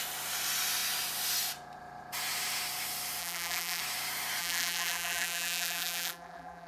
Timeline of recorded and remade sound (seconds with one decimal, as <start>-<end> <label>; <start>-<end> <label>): 0.0-3.2 recorded; 3.2-3.8 remade; 3.8-4.4 recorded; 4.4-6.7 remade